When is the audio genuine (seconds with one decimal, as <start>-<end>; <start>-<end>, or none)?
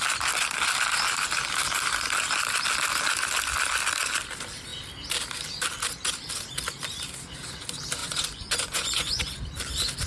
0.0-8.0; 9.4-10.1